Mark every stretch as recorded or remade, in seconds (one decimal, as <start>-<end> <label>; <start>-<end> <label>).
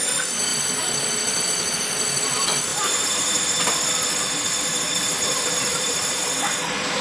0.0-2.7 recorded; 2.7-3.6 remade; 3.6-5.7 recorded; 5.7-6.2 remade; 6.2-7.0 recorded